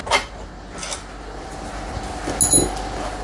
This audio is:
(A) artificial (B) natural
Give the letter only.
B